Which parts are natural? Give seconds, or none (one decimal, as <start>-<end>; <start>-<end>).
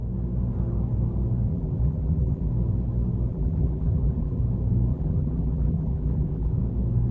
0.0-1.5; 2.5-3.3; 4.4-4.9; 6.6-7.1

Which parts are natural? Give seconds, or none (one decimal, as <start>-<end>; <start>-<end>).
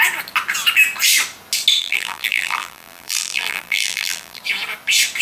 0.0-1.8; 4.4-5.2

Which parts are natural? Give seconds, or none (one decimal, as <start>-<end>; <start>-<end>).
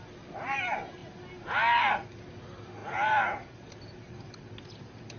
0.0-5.2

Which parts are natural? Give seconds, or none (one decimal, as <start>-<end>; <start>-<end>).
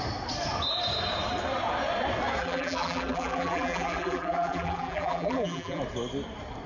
0.0-2.4; 5.8-6.7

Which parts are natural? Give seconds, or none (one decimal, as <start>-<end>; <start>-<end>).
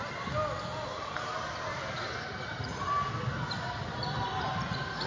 0.0-1.7; 2.9-5.1